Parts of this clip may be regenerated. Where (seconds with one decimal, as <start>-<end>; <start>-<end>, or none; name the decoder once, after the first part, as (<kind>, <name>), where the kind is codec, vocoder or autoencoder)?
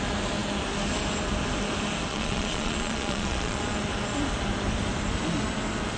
2.1-3.6 (vocoder, Vocos)